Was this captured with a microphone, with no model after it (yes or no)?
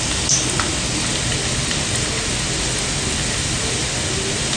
yes